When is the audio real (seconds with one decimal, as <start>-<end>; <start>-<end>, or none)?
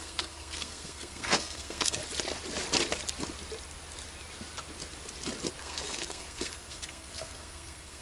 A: 2.0-5.6